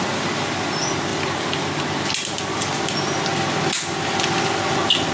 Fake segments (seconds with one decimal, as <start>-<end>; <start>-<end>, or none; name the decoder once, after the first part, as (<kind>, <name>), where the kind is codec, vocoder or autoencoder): 1.1-1.8 (vocoder, BigVGAN v2)